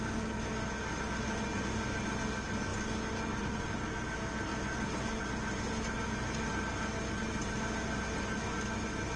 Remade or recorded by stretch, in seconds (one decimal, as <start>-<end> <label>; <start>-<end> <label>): 0.0-9.2 recorded

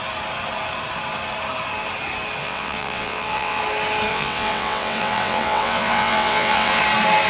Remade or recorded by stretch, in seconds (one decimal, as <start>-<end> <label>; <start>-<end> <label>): 0.0-2.4 recorded; 2.4-3.6 remade; 3.6-4.1 recorded; 4.1-6.8 remade; 6.8-7.3 recorded